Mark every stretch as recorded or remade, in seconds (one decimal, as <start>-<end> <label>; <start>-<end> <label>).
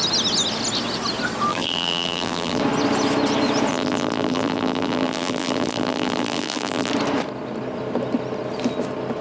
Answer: 0.0-1.5 recorded; 1.5-2.6 remade; 2.6-3.7 recorded; 3.7-6.9 remade; 6.9-9.2 recorded